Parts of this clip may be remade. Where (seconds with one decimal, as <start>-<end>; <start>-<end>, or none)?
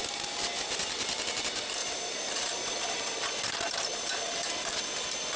1.8-3.0; 3.9-4.8